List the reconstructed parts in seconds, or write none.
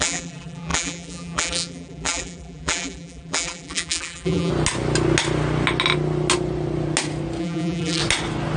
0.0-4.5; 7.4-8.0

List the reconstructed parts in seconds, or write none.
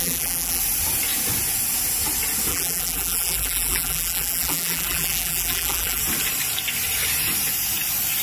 0.0-0.6; 2.5-6.0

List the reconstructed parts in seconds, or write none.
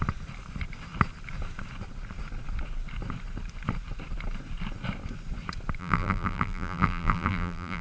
5.8-7.8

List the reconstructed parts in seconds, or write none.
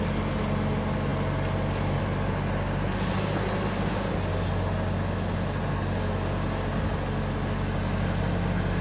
none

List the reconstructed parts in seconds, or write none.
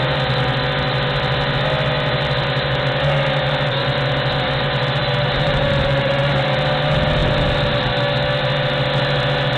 5.0-6.1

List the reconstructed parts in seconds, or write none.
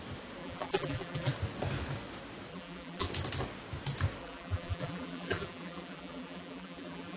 0.4-1.3; 2.5-3.1; 4.2-7.2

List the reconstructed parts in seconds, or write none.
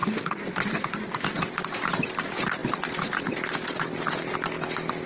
none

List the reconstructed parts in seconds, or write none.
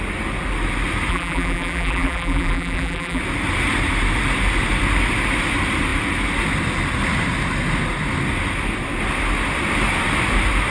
1.1-3.2